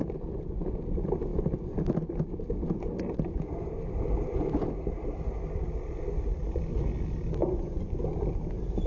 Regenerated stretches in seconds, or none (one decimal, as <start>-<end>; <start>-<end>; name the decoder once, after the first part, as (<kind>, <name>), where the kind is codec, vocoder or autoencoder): 7.4-8.0 (vocoder, Vocos)

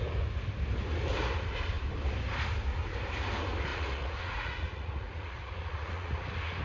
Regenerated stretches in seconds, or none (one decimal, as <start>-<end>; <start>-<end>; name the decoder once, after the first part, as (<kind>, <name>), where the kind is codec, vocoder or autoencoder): 3.7-6.6 (vocoder, Vocos)

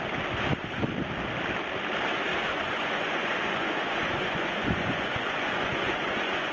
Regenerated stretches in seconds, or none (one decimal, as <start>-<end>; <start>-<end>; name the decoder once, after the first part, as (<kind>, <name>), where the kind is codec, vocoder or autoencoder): 2.3-6.5 (vocoder, Vocos)